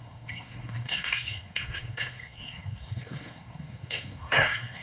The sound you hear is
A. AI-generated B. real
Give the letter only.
A